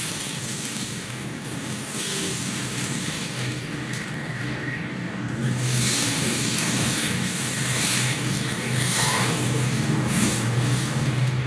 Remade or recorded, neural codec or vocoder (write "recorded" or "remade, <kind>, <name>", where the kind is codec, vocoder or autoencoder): remade, codec, DAC